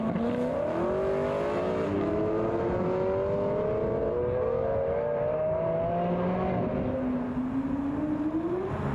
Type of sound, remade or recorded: recorded